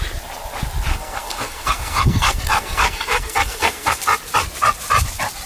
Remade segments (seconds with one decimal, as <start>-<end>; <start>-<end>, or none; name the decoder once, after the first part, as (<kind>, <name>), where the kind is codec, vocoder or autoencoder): 0.9-4.0 (codec, SNAC)